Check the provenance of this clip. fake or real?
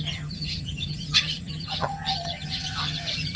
fake